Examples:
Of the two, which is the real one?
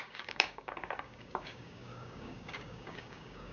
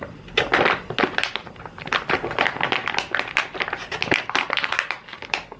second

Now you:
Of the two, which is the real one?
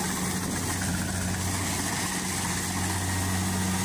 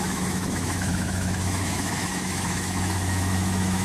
first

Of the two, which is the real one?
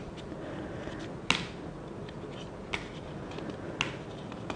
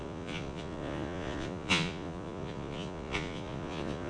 first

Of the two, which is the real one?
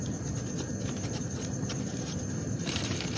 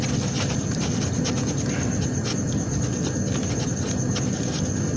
second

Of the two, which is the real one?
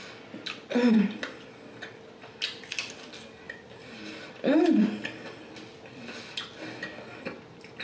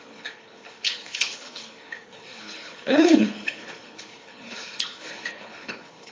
first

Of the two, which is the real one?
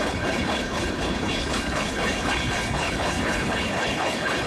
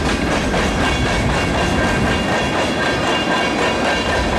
second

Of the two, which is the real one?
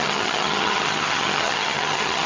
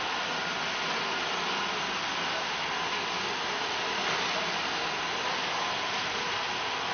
second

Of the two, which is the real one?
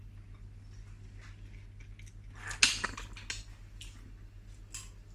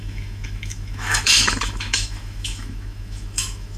first